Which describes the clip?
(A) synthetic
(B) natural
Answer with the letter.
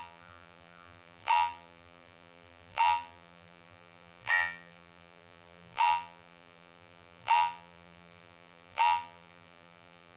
A